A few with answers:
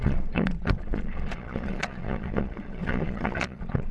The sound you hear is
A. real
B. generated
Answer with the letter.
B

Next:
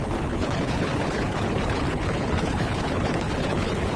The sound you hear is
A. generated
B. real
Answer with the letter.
A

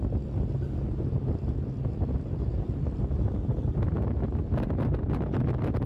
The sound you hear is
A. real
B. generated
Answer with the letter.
A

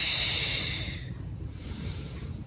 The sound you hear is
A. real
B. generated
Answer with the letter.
B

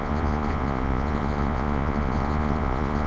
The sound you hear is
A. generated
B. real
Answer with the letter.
A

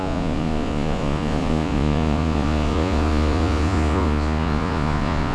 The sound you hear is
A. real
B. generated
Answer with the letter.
B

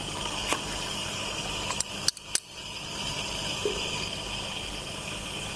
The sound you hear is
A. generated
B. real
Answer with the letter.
B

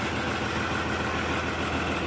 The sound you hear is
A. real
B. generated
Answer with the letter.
A